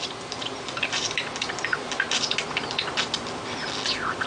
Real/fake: real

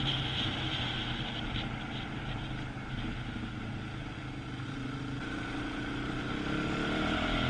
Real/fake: real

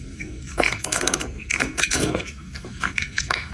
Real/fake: fake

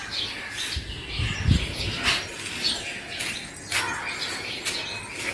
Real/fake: real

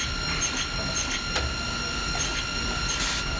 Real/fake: real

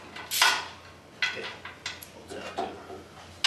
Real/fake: real